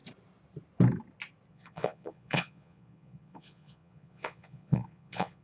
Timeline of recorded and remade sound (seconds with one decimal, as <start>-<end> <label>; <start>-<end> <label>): 0.0-1.5 recorded; 1.5-5.4 remade

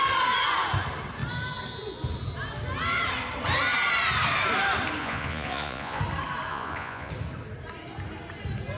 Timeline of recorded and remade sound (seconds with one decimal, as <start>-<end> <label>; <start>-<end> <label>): 0.0-5.0 recorded; 5.0-6.0 remade; 6.0-6.5 recorded; 6.5-7.1 remade; 7.1-8.8 recorded

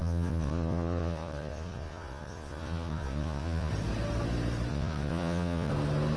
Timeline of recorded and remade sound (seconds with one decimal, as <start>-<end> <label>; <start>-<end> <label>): 0.0-3.7 remade; 3.7-4.7 recorded; 4.7-5.7 remade; 5.7-6.2 recorded

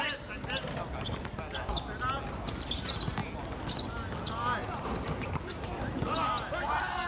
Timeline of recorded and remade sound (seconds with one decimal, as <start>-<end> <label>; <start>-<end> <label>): 0.0-7.1 recorded

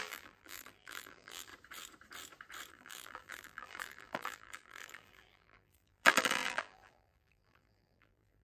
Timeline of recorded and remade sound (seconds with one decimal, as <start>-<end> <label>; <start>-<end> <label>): 0.0-1.5 remade; 1.5-2.7 recorded; 2.7-8.4 remade